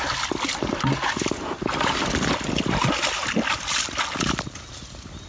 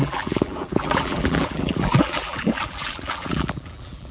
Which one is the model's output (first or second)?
second